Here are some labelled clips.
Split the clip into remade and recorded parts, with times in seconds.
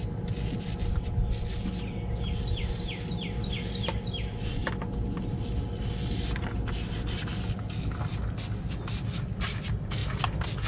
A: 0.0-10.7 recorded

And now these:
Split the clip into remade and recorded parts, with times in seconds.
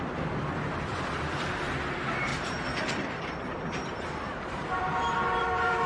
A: 0.0-2.3 recorded; 2.3-5.9 remade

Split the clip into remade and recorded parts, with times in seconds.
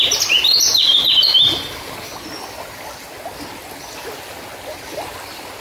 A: 0.0-5.6 recorded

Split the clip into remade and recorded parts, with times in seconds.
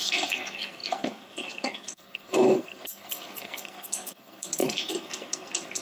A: 0.0-5.8 remade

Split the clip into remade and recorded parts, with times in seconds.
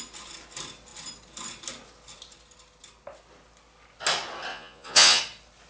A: 0.0-4.5 recorded; 4.5-5.2 remade; 5.2-5.7 recorded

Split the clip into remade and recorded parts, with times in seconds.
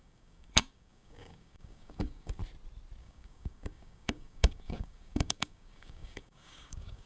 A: 0.0-2.4 remade; 2.4-3.0 recorded; 3.0-7.1 remade